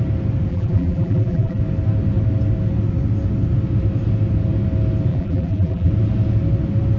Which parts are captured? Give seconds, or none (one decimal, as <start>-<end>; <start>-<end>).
0.0-0.5; 1.6-5.1; 5.9-7.0